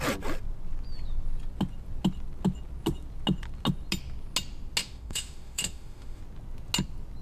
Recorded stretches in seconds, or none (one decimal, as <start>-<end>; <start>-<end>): 0.0-4.8; 6.2-7.2